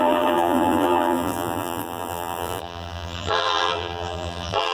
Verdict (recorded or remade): remade